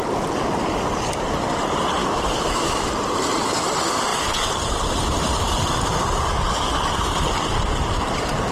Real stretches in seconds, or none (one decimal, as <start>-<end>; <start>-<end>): 0.0-2.0; 2.9-8.5